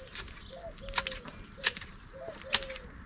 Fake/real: real